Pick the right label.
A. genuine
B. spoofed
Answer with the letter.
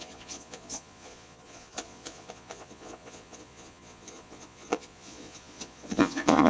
B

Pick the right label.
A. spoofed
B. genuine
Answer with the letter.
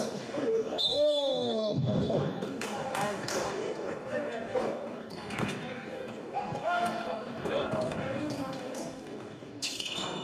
A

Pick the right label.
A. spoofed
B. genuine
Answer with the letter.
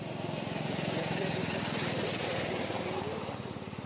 B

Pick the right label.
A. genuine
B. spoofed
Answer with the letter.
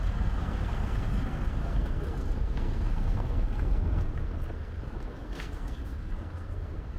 B